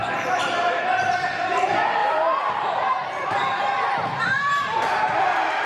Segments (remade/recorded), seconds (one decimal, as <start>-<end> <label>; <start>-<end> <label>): 0.0-5.7 remade